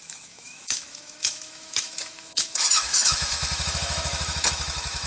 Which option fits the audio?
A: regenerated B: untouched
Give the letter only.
A